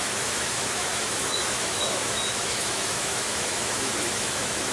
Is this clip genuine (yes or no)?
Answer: no